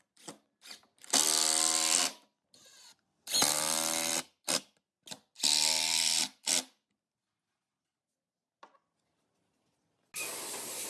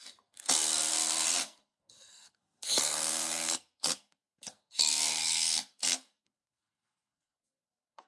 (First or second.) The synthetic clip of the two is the second